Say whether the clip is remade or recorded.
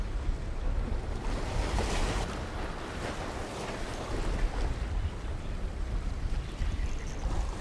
recorded